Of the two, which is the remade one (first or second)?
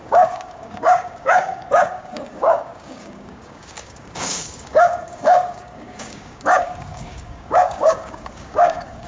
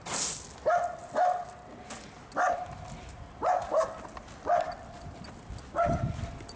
first